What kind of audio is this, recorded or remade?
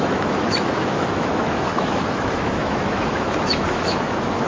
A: remade